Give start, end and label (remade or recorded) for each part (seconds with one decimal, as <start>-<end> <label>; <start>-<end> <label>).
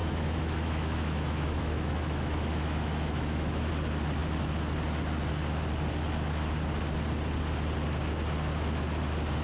0.0-3.7 remade; 3.7-9.4 recorded